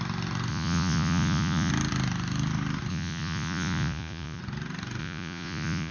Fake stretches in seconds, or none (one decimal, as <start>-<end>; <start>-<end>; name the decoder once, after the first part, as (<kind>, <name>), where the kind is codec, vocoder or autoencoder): 0.5-1.7 (vocoder, Vocos); 2.9-4.4; 5.0-5.9

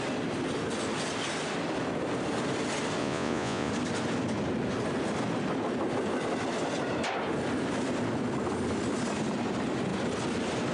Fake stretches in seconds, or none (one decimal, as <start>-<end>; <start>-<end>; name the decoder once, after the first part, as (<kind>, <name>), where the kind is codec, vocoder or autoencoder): 3.0-3.7 (vocoder, Vocos)

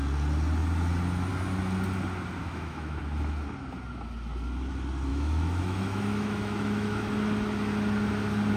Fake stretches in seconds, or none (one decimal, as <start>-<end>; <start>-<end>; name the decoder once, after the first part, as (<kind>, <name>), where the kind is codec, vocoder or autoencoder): 2.4-3.0 (autoencoder, DAC-VAE); 5.1-7.1

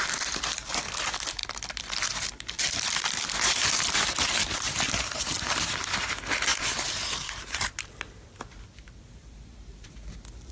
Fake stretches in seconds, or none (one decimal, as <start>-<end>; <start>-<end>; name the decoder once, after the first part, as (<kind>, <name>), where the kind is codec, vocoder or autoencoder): 6.5-10.1 (vocoder, BigVGAN v2)

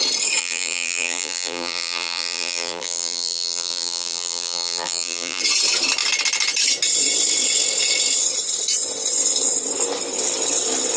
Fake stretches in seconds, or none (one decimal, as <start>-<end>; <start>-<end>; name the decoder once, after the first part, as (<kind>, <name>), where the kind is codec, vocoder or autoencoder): 0.4-5.4 (vocoder, BigVGAN v2)